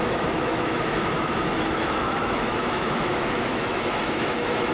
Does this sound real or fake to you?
fake